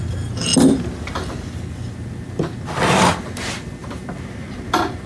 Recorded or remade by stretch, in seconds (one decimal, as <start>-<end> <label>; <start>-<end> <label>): 0.0-3.8 recorded; 3.8-5.1 remade